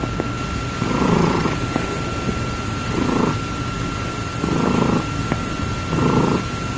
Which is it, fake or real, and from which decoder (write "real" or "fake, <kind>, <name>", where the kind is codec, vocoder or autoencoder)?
real